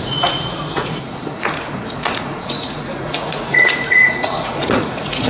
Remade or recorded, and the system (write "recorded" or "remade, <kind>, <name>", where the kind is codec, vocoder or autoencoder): remade, vocoder, Vocos